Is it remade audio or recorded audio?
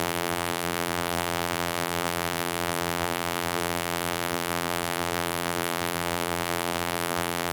remade